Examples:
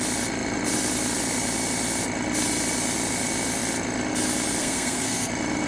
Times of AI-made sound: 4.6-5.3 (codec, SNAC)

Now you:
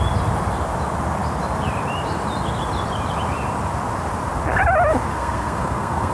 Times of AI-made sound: 5.1-6.1 (codec, SNAC)

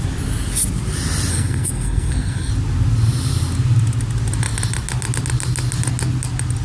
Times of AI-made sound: 1.3-2.5 (codec, SNAC)

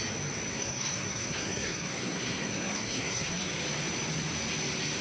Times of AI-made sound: 0.5-3.5 (codec, SNAC)

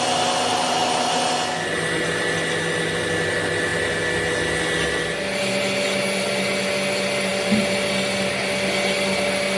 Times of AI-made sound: none

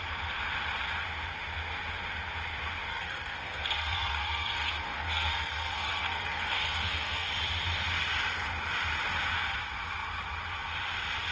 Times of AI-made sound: 2.9-7.3 (codec, SNAC)